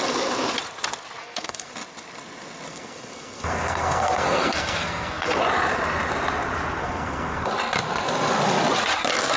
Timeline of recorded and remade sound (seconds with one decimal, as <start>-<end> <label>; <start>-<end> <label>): 0.0-1.2 recorded; 1.2-1.7 remade; 1.7-2.7 recorded; 2.7-5.4 remade; 5.4-6.8 recorded; 6.8-7.5 remade; 7.5-9.4 recorded